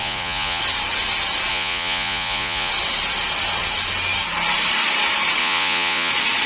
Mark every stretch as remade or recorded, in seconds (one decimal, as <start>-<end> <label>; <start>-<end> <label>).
0.0-0.6 remade; 0.6-1.5 recorded; 1.5-2.7 remade; 2.7-5.4 recorded; 5.4-6.1 remade; 6.1-6.5 recorded